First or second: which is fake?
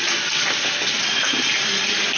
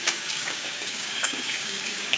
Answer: second